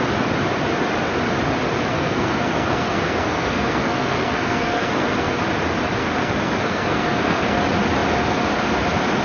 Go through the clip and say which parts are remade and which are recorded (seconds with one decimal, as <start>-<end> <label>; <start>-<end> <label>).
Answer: 0.0-1.9 recorded; 1.9-5.4 remade; 5.4-6.0 recorded; 6.0-7.6 remade; 7.6-9.2 recorded